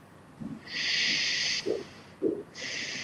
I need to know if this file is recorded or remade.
recorded